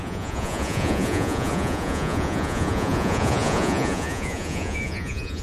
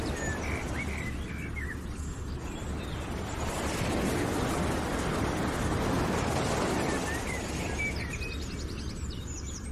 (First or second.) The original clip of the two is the second